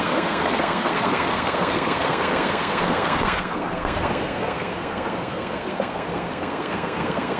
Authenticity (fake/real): fake